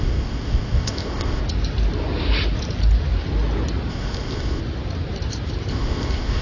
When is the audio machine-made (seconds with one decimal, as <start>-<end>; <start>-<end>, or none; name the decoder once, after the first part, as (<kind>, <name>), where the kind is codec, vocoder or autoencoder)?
0.0-1.4 (codec, ZipCodec); 3.9-4.6; 5.7-6.4